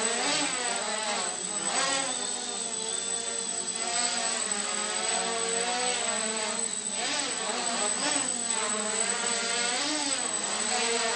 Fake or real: real